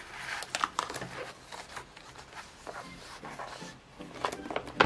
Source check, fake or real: real